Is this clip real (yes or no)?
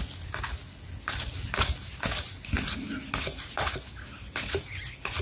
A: yes